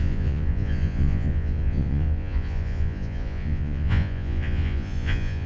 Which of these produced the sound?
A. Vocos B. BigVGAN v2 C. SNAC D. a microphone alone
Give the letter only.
A